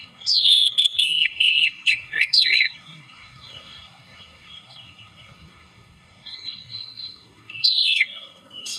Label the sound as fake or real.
fake